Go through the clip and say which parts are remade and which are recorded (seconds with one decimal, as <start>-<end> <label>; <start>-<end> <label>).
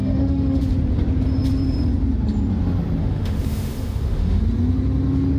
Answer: 0.0-0.6 remade; 0.6-3.0 recorded; 3.0-4.4 remade; 4.4-5.4 recorded